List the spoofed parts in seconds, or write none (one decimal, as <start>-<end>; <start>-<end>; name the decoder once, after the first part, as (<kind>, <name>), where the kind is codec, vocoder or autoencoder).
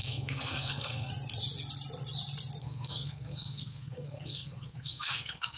0.0-1.1 (codec, SNAC); 2.6-5.6